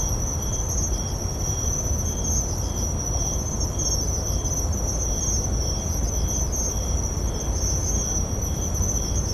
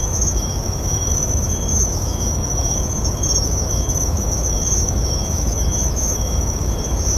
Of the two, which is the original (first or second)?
first